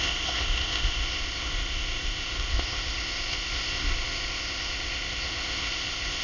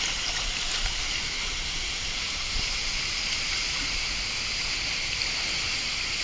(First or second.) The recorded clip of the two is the second